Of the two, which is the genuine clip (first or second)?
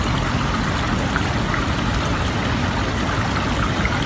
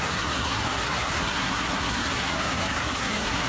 first